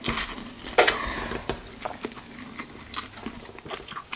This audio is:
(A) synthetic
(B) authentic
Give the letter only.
B